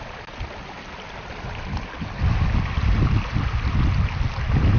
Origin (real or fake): real